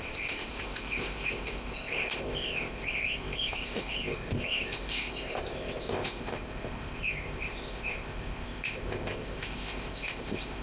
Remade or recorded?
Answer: remade